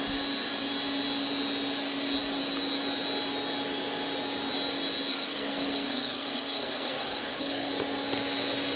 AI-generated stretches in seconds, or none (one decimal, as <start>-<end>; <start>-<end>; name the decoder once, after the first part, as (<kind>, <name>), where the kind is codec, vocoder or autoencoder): 5.1-7.7 (codec, SNAC)

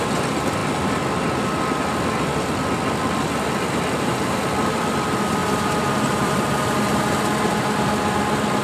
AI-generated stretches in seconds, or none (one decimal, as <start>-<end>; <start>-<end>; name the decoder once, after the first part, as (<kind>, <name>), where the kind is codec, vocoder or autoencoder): 5.4-7.0 (vocoder, BigVGAN v2)

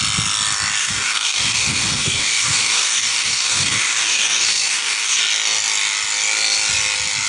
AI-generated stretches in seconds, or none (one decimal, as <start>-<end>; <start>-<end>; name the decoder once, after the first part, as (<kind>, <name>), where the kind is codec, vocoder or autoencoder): 0.8-5.2 (codec, DAC)

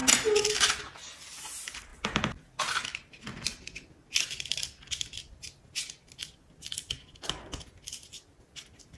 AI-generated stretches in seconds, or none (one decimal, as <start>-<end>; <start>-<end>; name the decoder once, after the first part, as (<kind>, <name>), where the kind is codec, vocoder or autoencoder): none

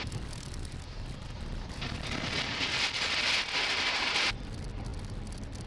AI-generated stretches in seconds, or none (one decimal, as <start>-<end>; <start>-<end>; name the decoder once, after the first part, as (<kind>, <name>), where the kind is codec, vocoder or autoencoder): none

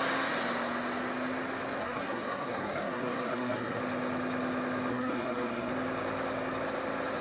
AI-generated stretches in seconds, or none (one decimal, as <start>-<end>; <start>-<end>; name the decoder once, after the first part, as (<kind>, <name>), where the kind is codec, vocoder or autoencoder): 1.8-3.8 (codec, SNAC); 4.9-5.7

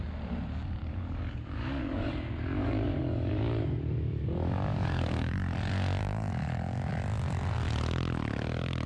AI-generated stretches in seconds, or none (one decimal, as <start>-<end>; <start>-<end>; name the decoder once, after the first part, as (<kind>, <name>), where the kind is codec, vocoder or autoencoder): 0.8-2.1 (codec, DAC); 2.6-5.3; 6.0-6.9

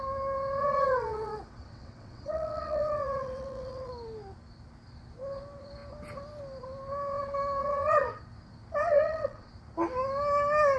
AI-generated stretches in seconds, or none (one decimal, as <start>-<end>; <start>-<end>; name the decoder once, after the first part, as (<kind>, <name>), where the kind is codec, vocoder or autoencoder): 0.6-3.9 (vocoder, WaveNeXt); 7.6-8.2; 8.8-9.5